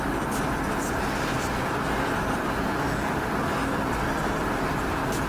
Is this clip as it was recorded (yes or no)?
yes